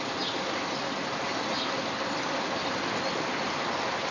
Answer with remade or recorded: recorded